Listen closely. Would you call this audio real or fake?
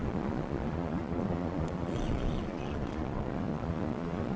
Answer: fake